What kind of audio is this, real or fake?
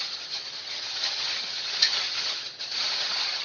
fake